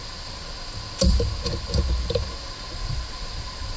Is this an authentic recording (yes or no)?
yes